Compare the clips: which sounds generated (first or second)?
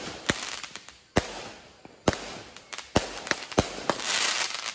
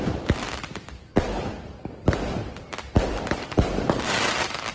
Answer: second